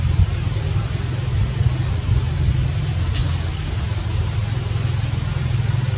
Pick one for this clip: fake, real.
real